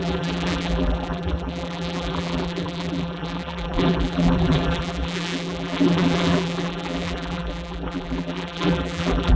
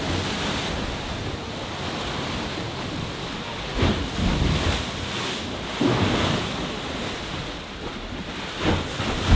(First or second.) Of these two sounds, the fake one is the first